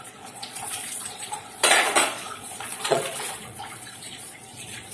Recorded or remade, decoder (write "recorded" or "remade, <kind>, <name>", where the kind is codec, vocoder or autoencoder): remade, vocoder, Vocos